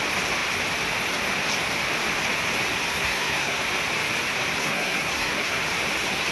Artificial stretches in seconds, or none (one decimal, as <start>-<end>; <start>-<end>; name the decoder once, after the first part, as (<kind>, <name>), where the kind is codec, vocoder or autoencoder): 2.9-3.6 (codec, SNAC); 4.6-5.6